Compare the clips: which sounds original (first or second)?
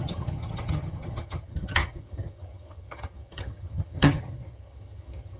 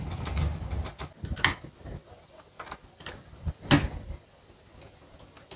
second